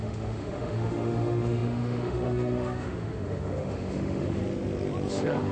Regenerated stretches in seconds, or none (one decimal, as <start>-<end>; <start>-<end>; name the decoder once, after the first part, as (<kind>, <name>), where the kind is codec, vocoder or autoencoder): 0.0-4.4 (autoencoder, DAC-VAE); 5.1-5.5